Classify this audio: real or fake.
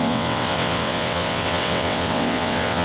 fake